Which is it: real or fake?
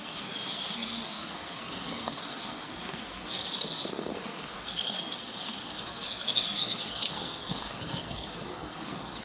fake